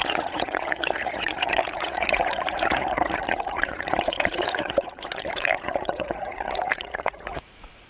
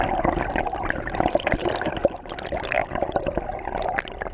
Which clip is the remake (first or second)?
first